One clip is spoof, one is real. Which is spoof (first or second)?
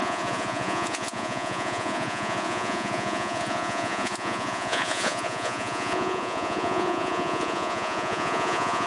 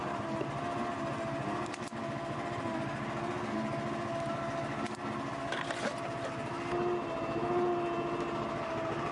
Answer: first